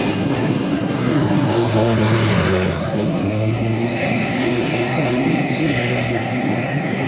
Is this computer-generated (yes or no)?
yes